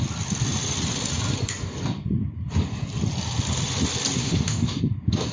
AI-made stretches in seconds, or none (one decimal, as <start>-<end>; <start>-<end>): 4.2-4.8